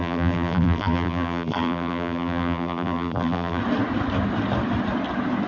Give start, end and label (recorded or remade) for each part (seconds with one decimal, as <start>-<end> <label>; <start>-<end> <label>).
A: 0.0-3.6 remade; 3.6-5.5 recorded

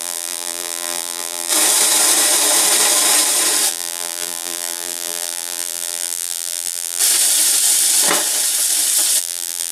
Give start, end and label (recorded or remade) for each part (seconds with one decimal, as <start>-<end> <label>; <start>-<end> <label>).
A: 0.0-1.5 remade; 1.5-3.7 recorded; 3.7-7.0 remade; 7.0-9.2 recorded; 9.2-9.7 remade

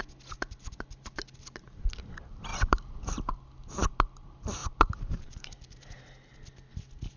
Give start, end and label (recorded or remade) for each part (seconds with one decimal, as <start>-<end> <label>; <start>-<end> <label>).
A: 0.0-2.5 recorded; 2.5-3.3 remade; 3.3-4.6 recorded; 4.6-6.0 remade; 6.0-7.2 recorded

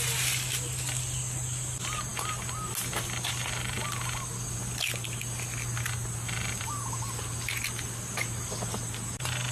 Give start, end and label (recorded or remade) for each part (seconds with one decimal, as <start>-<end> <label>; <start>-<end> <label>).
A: 0.0-9.5 recorded

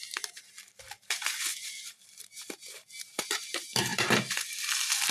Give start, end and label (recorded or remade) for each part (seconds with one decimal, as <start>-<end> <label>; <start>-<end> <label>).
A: 0.0-5.1 remade

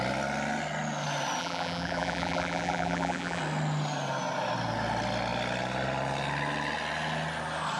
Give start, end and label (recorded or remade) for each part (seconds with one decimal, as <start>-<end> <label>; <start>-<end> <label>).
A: 0.0-1.4 recorded; 1.4-3.4 remade; 3.4-7.8 recorded

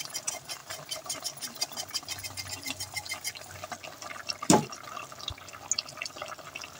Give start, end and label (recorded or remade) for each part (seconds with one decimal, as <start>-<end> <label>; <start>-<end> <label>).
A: 0.0-0.6 recorded; 0.6-1.2 remade; 1.2-6.8 recorded

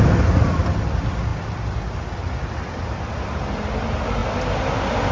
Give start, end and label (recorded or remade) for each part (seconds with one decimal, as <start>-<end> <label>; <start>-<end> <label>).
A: 0.0-5.1 recorded